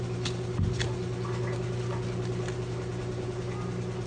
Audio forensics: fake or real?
real